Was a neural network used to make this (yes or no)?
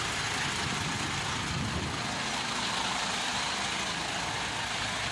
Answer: no